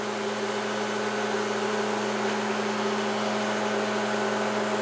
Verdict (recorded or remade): recorded